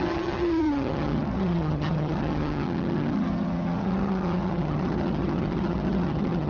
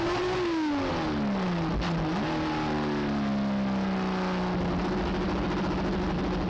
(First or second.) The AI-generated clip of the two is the first